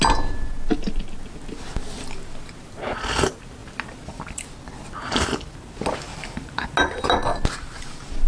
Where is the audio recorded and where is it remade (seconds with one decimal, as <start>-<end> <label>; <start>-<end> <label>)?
0.0-6.1 recorded; 6.1-6.6 remade; 6.6-7.3 recorded; 7.3-8.3 remade